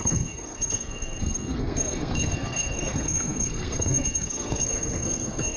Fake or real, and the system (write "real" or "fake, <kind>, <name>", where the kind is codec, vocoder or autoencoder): fake, codec, SNAC